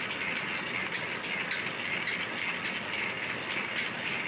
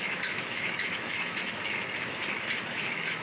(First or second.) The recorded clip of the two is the first